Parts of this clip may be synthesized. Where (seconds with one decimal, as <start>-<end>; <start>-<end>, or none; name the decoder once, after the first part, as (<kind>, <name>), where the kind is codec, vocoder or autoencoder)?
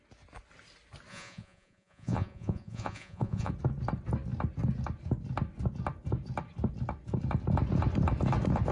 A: 1.1-3.5 (vocoder, Vocos)